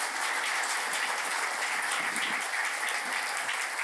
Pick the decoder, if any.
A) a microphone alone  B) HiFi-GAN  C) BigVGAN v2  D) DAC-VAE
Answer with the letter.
A